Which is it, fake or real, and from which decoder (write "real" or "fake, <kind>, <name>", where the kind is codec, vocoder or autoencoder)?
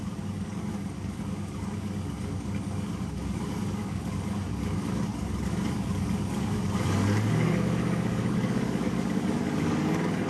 fake, codec, DAC